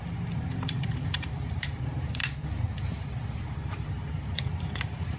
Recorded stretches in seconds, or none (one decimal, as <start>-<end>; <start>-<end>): 2.2-3.6